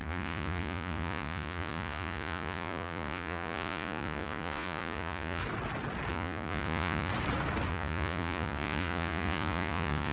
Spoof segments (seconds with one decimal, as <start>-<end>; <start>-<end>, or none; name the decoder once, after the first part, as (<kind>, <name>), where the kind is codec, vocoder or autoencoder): 0.0-5.4 (vocoder, Vocos); 6.1-7.1; 7.7-10.1